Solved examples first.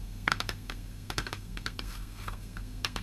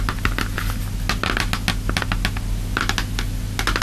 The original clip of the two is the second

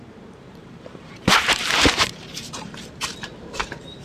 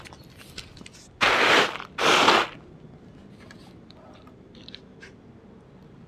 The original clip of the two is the second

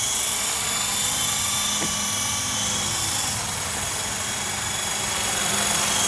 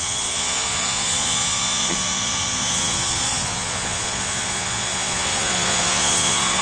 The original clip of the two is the first